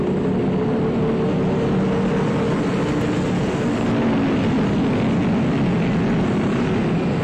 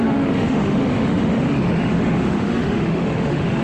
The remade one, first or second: second